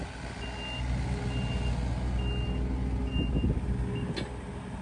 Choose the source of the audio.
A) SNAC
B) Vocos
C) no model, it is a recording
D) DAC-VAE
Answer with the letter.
C